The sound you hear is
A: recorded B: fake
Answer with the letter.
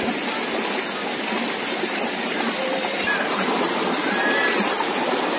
A